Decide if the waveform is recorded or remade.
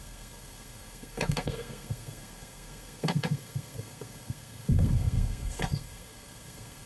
remade